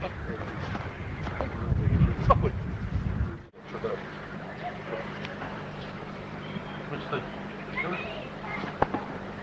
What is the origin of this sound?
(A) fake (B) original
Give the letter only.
A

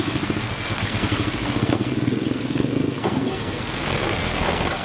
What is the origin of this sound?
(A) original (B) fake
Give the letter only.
B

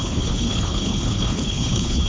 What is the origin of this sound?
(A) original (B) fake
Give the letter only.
B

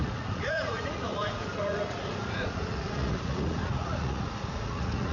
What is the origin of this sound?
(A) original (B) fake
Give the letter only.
B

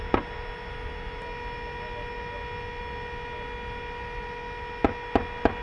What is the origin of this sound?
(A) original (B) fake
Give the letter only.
A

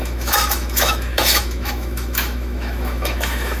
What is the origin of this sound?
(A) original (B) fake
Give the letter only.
B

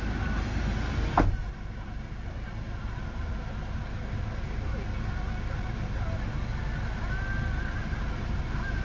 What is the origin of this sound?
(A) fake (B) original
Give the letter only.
B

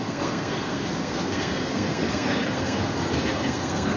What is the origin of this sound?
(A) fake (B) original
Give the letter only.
A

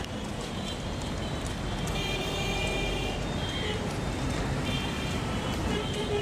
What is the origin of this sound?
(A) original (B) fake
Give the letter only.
A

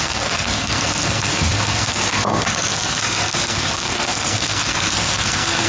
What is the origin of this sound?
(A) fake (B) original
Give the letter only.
A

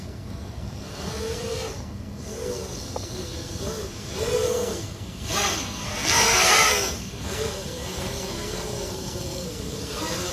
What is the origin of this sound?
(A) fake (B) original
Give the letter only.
A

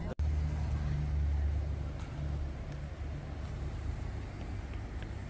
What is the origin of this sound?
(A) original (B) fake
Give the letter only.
A